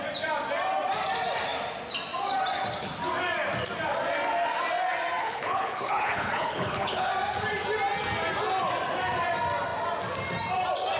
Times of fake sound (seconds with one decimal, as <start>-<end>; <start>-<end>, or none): 5.2-7.1